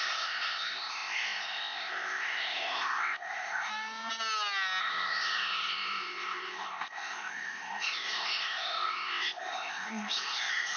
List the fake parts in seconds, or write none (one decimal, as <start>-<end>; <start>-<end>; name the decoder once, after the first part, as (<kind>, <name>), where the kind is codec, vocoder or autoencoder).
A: 0.0-3.7 (codec, ZipCodec); 4.8-10.8

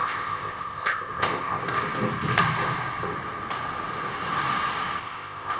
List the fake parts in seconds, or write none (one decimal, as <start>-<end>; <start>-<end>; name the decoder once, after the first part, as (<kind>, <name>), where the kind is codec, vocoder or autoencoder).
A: 0.0-1.6 (codec, ZipCodec); 5.0-5.6